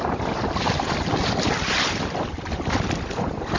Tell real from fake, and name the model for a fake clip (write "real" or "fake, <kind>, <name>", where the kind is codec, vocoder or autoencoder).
real